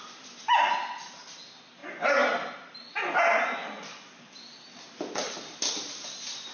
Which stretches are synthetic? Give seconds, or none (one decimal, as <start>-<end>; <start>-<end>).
none